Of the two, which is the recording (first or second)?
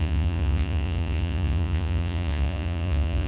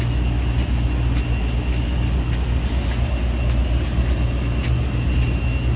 second